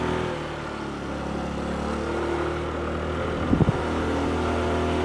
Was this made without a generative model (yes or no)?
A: yes